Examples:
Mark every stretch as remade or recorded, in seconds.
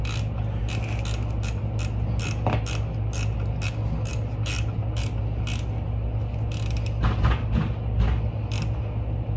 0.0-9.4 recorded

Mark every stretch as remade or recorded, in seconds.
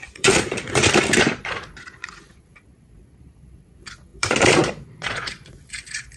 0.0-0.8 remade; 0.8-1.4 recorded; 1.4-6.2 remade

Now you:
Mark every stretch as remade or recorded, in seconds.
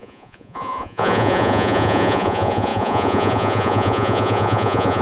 0.0-5.0 remade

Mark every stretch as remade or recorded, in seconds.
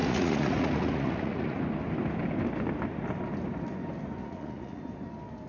0.0-1.6 remade; 1.6-4.2 recorded; 4.2-4.8 remade; 4.8-5.5 recorded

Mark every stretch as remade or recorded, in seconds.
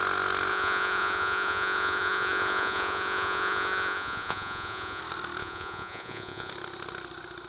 0.0-0.5 recorded; 0.5-5.0 remade; 5.0-5.4 recorded; 5.4-6.5 remade; 6.5-7.5 recorded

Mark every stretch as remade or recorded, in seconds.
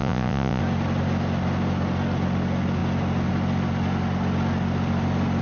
0.0-0.6 remade; 0.6-5.4 recorded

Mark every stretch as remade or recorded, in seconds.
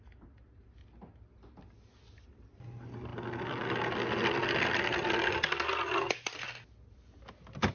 0.0-7.7 recorded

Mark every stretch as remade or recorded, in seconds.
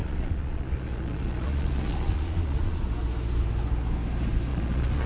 0.0-2.8 remade; 2.8-4.5 recorded; 4.5-5.1 remade